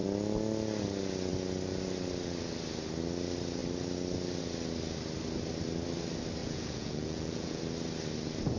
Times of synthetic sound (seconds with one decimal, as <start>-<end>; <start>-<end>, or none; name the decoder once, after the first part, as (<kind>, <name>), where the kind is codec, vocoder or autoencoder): 6.4-7.6 (vocoder, Vocos)